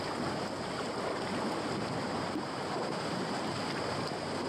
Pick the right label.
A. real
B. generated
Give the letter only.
B